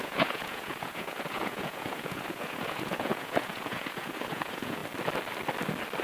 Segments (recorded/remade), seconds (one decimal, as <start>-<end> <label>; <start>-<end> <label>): 0.0-4.8 remade; 4.8-6.0 recorded